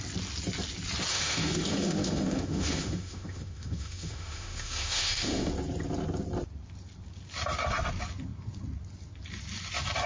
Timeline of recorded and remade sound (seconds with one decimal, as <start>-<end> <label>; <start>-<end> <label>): 0.0-1.1 recorded; 1.1-5.5 remade; 5.5-10.1 recorded